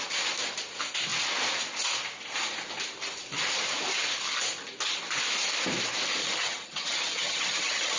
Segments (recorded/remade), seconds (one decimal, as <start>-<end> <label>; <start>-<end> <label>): 0.0-6.2 recorded; 6.2-8.0 remade